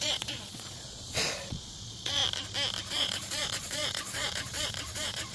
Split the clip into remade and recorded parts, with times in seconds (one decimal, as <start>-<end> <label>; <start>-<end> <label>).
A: 0.0-2.2 remade; 2.2-2.9 recorded; 2.9-5.3 remade